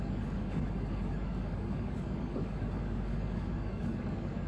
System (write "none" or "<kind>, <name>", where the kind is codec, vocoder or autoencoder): codec, DAC